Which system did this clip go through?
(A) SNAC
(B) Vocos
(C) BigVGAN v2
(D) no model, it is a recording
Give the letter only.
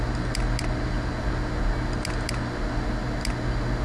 D